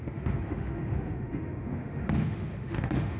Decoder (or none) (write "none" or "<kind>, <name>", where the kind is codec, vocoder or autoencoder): autoencoder, DAC-VAE